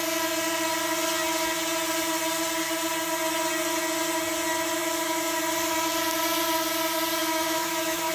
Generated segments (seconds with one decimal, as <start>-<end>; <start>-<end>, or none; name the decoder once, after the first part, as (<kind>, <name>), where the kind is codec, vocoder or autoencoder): 4.8-5.4 (autoencoder, DAC-VAE); 7.2-8.1